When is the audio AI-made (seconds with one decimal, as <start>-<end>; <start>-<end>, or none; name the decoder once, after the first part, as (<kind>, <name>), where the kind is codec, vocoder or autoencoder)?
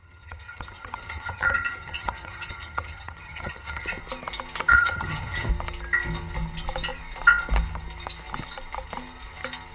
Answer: 0.0-3.9 (vocoder, HiFi-GAN); 4.7-5.5